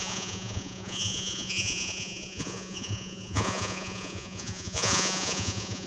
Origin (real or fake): fake